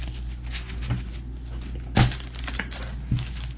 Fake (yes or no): no